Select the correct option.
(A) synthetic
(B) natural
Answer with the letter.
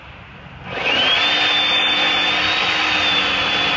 B